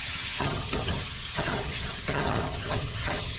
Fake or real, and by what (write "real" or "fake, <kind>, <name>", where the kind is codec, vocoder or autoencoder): fake, vocoder, HiFi-GAN